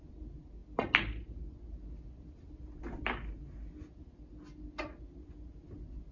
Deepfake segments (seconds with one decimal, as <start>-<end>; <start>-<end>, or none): none